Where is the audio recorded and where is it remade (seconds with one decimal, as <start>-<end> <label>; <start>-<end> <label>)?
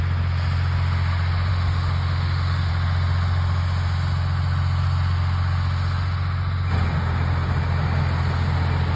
0.0-1.5 recorded; 1.5-2.7 remade; 2.7-9.0 recorded